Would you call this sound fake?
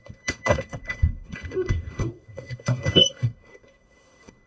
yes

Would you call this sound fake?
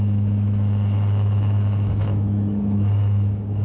yes